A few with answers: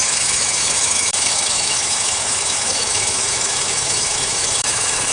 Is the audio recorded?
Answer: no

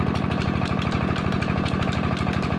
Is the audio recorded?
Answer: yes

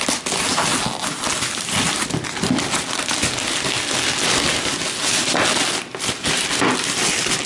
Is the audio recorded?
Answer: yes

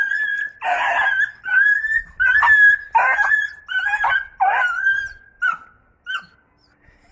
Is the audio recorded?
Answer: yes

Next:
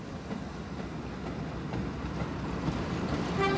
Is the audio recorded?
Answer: yes